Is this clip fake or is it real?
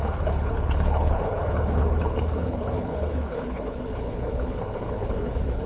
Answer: fake